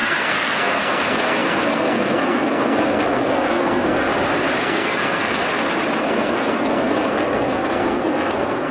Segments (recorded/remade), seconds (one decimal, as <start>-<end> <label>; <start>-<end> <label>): 0.0-4.1 remade; 4.1-4.6 recorded; 4.6-5.4 remade; 5.4-6.0 recorded; 6.0-8.7 remade